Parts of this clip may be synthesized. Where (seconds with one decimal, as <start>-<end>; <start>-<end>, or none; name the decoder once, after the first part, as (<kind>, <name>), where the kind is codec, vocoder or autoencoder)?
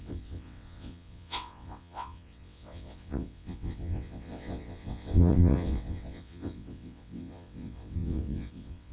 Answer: 0.0-8.9 (vocoder, WaveNeXt)